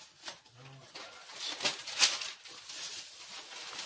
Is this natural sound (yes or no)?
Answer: yes